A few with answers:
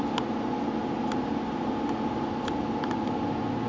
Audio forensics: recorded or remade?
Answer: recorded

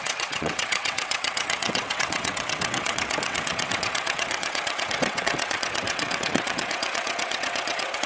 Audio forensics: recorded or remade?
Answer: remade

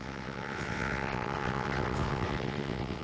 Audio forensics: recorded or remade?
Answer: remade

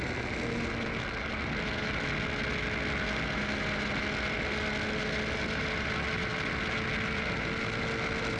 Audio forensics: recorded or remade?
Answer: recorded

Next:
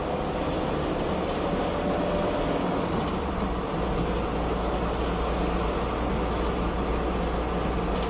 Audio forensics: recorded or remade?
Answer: recorded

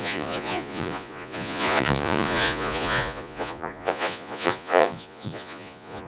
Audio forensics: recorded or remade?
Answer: remade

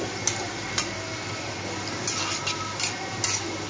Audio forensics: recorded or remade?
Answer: recorded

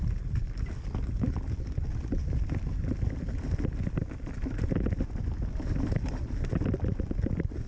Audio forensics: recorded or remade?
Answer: recorded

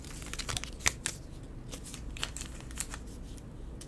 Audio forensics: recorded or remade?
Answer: recorded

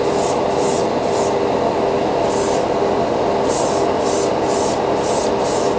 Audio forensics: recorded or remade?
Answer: recorded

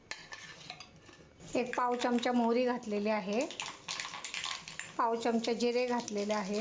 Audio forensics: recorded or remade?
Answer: recorded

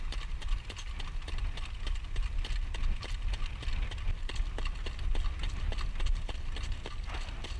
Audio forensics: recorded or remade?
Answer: recorded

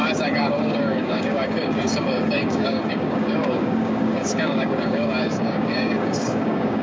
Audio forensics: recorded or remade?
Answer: remade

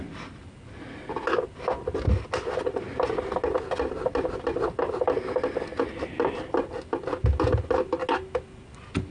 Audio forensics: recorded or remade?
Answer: recorded